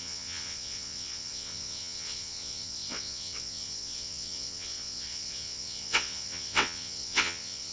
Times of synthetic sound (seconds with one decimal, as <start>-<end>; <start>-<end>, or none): 0.0-7.7